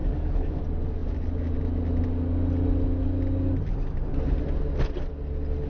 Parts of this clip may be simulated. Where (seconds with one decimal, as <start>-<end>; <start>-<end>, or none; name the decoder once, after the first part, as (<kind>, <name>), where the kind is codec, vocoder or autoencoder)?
0.0-0.6 (codec, DAC)